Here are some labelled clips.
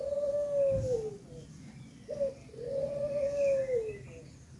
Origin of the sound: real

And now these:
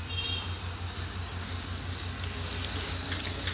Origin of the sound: real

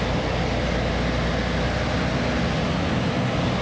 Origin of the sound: real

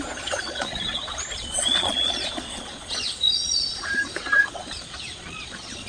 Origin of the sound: fake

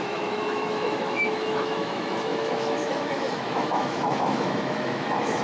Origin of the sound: fake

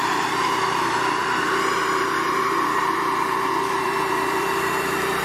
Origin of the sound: fake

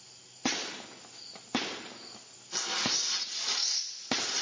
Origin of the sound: real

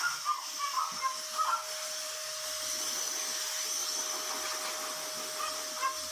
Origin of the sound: real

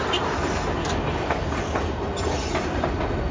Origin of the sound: real